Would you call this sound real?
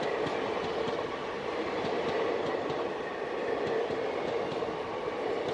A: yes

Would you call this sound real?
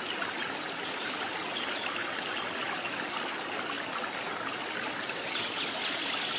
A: yes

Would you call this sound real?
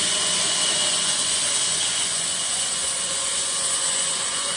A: no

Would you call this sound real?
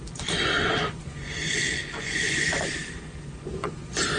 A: no